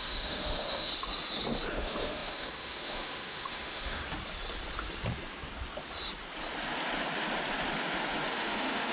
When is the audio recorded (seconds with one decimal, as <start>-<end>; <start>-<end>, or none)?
0.9-1.7; 4.0-8.3